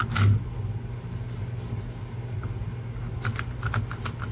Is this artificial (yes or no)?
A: no